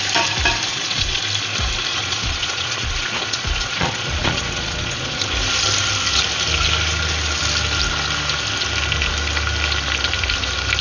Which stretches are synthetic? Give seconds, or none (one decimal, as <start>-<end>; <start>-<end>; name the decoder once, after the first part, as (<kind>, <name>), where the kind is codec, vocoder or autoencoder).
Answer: 0.7-1.2 (vocoder, Vocos); 1.9-5.2